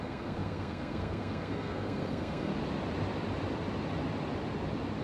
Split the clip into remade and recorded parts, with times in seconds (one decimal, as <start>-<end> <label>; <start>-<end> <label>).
0.0-2.5 remade; 2.5-5.0 recorded